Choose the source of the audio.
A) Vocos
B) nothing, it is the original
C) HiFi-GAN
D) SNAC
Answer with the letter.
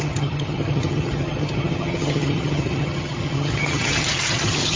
C